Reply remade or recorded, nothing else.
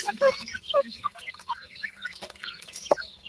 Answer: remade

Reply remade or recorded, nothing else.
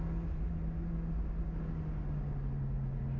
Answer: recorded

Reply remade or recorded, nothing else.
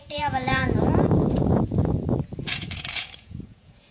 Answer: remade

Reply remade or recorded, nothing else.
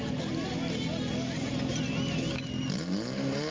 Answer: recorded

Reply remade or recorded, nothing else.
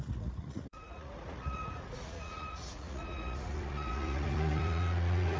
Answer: remade